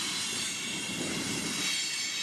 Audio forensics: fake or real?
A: real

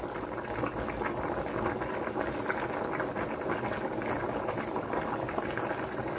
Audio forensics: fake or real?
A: real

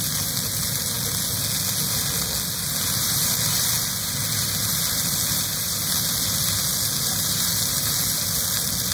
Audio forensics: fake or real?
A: real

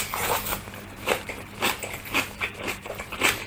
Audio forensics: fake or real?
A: fake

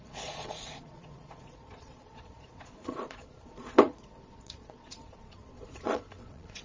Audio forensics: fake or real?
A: fake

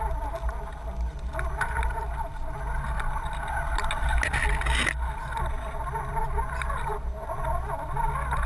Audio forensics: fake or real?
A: real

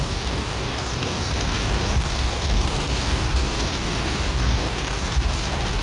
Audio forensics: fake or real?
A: fake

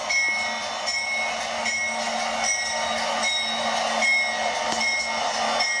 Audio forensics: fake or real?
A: real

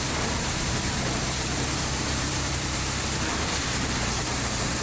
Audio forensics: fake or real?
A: fake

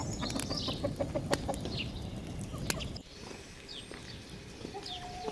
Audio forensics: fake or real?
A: real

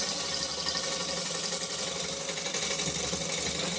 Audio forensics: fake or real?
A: real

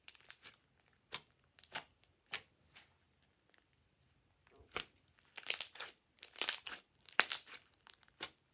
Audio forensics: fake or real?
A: fake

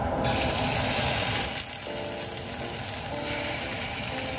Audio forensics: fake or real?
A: real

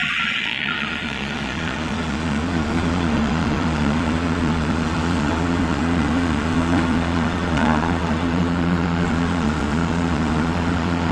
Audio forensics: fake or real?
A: fake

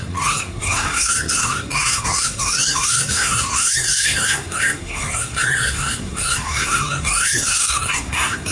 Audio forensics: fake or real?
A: fake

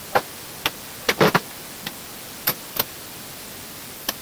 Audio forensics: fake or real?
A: real